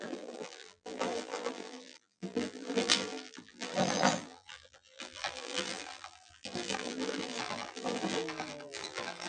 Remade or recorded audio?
remade